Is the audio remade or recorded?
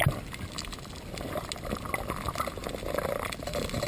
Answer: recorded